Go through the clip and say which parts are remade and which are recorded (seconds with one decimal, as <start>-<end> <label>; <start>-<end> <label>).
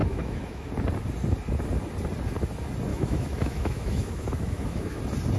0.0-0.7 remade; 0.7-2.9 recorded; 2.9-5.0 remade; 5.0-5.4 recorded